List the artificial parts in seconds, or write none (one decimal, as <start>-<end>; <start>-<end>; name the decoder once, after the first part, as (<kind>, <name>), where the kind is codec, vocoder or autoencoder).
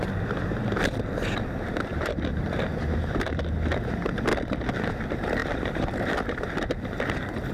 1.9-3.4 (vocoder, BigVGAN v2); 5.4-6.7